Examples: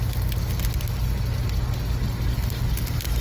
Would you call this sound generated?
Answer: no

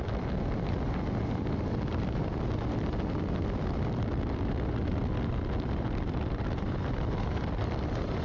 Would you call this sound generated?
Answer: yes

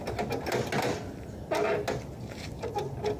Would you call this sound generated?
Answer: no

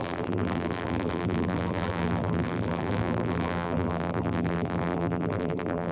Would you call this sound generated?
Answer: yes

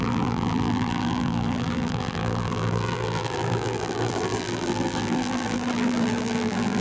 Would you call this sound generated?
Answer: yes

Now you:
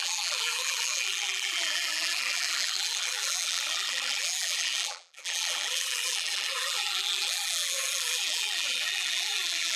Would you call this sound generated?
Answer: yes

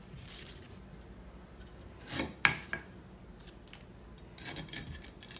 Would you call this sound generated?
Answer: no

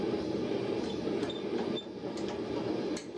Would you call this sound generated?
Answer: yes